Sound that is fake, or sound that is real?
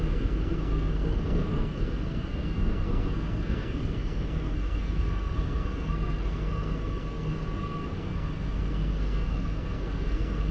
fake